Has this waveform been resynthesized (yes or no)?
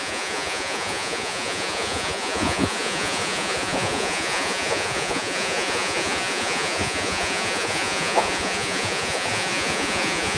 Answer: yes